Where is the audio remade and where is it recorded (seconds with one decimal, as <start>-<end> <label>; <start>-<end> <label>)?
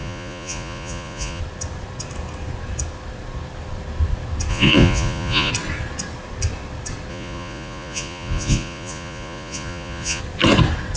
0.0-1.4 remade; 1.4-4.5 recorded; 4.5-5.5 remade; 5.5-7.1 recorded; 7.1-10.2 remade; 10.2-11.0 recorded